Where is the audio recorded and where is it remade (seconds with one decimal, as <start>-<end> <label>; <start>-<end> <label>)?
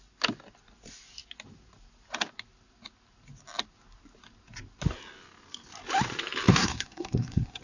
0.0-6.5 recorded; 6.5-7.6 remade